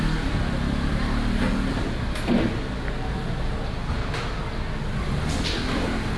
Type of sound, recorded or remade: recorded